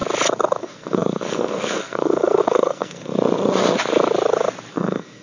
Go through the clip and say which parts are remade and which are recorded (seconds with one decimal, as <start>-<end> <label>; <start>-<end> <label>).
0.0-0.6 recorded; 0.6-3.1 remade; 3.1-4.7 recorded; 4.7-5.2 remade